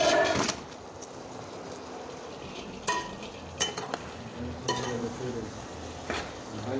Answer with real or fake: real